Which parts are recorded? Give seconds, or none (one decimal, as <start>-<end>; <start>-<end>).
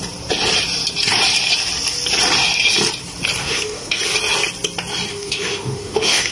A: 0.0-3.4; 4.0-5.1